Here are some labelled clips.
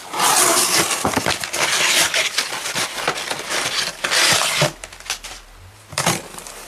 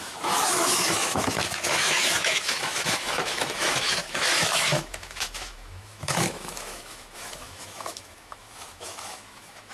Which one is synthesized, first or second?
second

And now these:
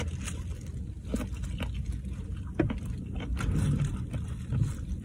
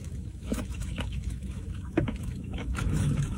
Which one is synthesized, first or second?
second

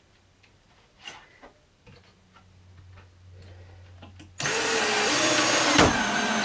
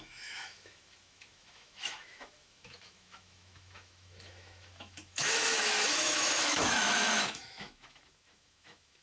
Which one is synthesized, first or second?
second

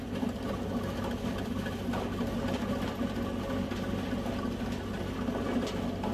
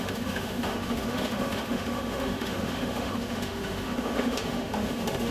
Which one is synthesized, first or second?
second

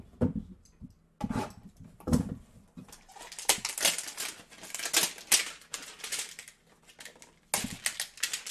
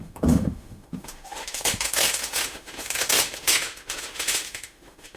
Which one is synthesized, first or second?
second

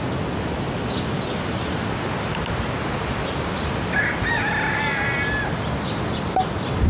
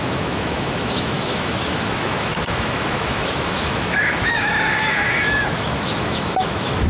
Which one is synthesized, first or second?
second